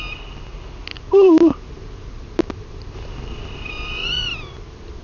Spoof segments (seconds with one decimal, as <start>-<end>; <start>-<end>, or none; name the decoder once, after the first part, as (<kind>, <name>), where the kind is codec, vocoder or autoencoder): 0.9-3.9 (vocoder, BigVGAN v2)

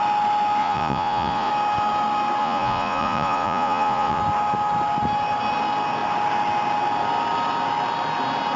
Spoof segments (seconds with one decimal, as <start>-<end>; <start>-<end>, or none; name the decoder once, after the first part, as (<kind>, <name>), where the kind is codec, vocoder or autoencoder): 0.6-1.5 (vocoder, Vocos); 2.4-4.2

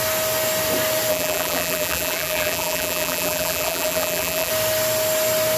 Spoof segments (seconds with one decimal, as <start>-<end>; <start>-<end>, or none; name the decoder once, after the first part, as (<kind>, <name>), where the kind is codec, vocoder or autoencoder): 1.1-4.5 (vocoder, BigVGAN v2)

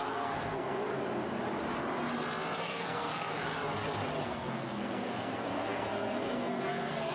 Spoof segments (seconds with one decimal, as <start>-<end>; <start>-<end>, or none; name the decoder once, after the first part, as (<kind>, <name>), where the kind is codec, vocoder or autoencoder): 0.0-0.9 (codec, SNAC); 2.6-3.5; 4.2-7.1

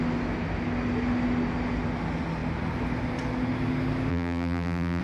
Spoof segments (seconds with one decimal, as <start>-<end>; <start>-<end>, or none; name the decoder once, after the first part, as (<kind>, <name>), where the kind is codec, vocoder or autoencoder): 4.1-5.0 (vocoder, BigVGAN v2)

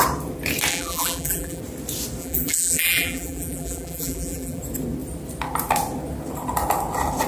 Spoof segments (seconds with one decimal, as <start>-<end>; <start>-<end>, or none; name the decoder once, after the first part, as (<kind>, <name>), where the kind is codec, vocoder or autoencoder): 0.7-1.6 (vocoder, BigVGAN v2); 2.2-4.6

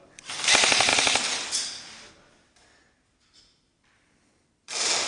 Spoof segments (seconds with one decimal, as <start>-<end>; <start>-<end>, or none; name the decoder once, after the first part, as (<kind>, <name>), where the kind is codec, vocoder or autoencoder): 0.0-0.9 (vocoder, BigVGAN v2); 3.4-5.1